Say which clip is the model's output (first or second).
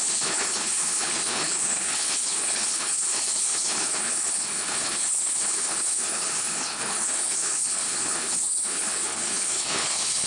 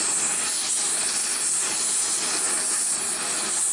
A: first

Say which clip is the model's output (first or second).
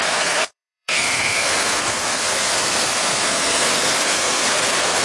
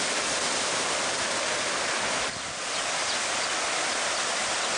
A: first